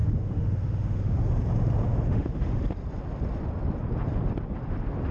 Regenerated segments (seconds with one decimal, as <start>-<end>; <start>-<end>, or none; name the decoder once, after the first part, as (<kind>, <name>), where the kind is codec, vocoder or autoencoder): 0.0-1.3 (autoencoder, DAC-VAE); 1.9-2.6